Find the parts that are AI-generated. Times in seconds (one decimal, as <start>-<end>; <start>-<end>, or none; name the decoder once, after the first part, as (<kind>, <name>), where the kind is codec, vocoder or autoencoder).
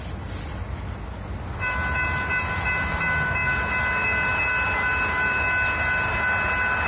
none